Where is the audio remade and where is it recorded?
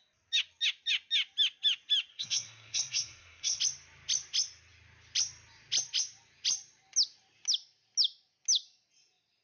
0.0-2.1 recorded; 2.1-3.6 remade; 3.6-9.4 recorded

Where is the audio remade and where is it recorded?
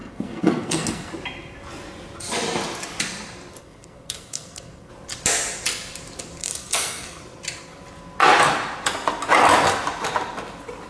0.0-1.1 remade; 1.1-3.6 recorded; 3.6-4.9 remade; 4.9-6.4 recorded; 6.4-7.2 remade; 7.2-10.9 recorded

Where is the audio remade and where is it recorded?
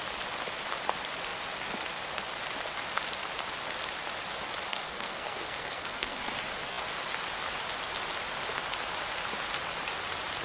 0.0-4.7 recorded; 4.7-6.2 remade; 6.2-10.4 recorded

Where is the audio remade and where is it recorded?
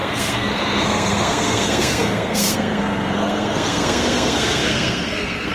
0.0-5.5 remade